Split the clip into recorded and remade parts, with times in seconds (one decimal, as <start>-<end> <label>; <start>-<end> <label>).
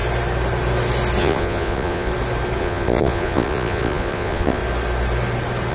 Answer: 0.0-1.2 recorded; 1.2-2.1 remade; 2.1-2.6 recorded; 2.6-4.6 remade; 4.6-5.7 recorded